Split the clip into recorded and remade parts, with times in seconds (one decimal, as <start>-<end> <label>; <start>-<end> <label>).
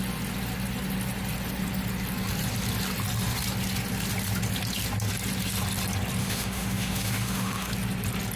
0.0-6.2 recorded; 6.2-7.7 remade; 7.7-8.4 recorded